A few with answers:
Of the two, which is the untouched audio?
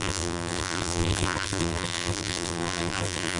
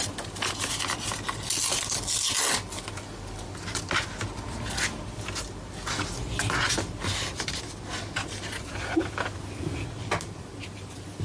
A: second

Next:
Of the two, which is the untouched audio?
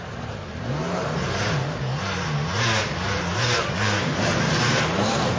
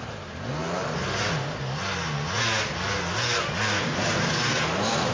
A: second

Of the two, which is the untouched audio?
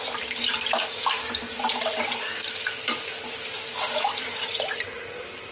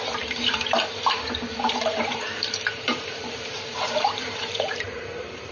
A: first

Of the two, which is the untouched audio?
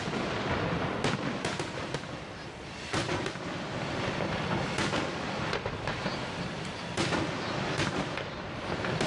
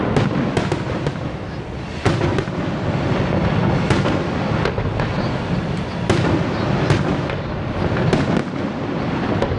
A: second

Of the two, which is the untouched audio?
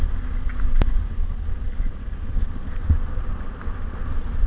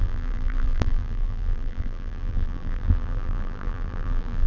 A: first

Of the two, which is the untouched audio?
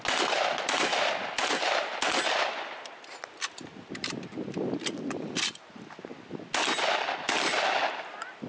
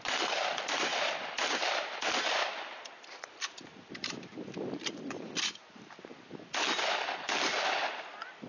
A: first